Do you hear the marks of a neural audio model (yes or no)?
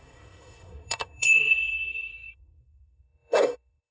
yes